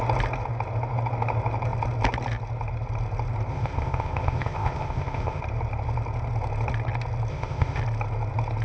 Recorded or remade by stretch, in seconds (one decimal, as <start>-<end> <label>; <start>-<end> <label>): 0.0-3.5 recorded; 3.5-5.4 remade; 5.4-7.3 recorded; 7.3-7.8 remade; 7.8-8.6 recorded